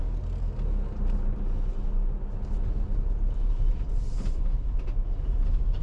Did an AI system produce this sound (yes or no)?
no